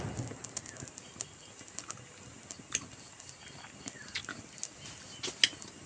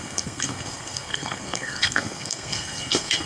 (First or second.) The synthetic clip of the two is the second